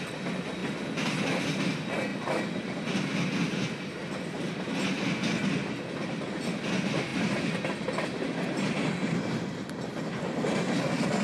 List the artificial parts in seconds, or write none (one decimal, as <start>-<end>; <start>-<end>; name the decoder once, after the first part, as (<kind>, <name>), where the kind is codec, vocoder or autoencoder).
7.1-8.6 (vocoder, BigVGAN v2)